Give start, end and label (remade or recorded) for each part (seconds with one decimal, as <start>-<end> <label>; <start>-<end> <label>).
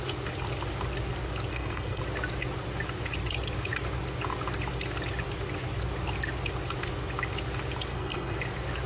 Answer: 0.0-1.5 recorded; 1.5-2.0 remade; 2.0-7.9 recorded; 7.9-8.4 remade; 8.4-8.9 recorded